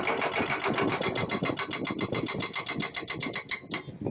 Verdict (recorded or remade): recorded